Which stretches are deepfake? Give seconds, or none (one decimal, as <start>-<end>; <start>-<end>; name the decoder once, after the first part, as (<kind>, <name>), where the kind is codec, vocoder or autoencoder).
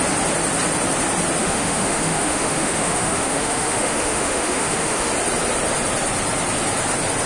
1.4-5.1 (autoencoder, DAC-VAE)